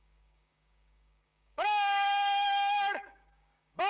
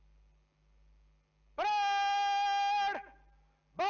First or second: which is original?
second